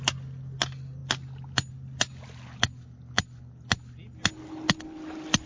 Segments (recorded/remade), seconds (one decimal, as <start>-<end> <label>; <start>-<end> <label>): 0.0-5.5 recorded